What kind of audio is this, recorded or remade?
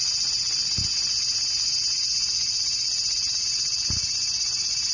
recorded